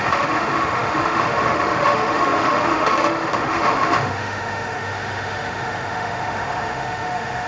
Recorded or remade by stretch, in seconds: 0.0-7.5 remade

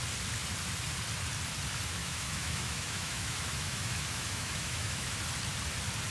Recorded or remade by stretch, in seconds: 0.0-2.0 recorded; 2.0-5.2 remade; 5.2-6.1 recorded